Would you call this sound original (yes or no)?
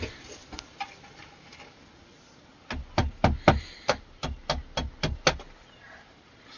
yes